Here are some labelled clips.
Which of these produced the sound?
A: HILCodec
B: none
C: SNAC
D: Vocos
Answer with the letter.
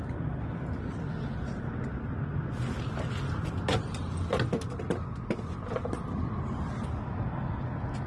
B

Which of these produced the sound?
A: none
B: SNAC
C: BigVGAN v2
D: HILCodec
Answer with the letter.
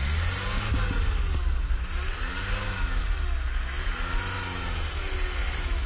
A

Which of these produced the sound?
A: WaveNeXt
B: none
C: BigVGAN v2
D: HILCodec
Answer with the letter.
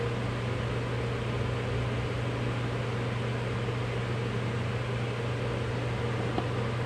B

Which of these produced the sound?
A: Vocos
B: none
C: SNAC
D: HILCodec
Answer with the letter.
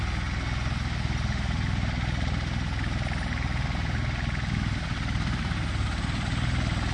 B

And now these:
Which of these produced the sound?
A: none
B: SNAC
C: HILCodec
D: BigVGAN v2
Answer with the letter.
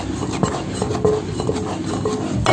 A